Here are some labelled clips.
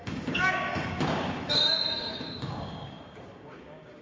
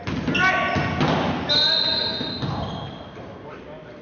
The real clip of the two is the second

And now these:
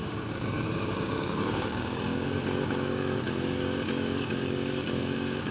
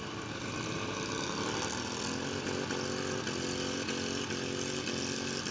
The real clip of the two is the second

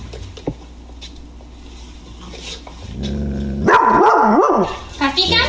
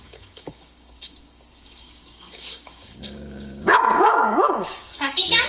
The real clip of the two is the first